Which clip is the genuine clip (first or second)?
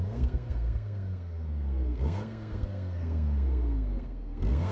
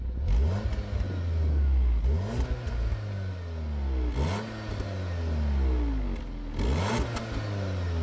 second